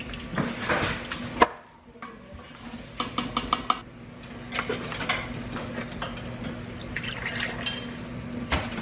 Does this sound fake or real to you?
real